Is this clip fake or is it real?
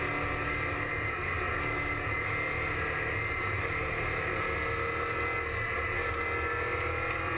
real